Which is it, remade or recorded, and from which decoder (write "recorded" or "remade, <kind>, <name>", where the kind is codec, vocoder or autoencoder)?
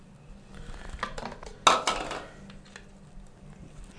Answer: recorded